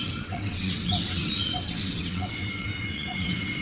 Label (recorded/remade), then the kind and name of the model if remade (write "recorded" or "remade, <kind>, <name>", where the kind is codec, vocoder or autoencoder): remade, vocoder, WaveNeXt